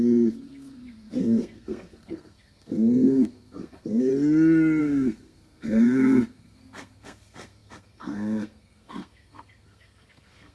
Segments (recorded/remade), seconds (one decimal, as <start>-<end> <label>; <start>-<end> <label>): 0.0-4.1 remade; 4.1-4.8 recorded; 4.8-10.5 remade